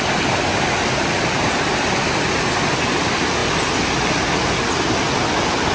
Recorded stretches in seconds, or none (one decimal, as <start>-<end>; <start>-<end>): 0.0-5.7